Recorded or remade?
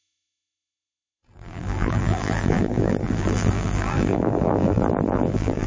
remade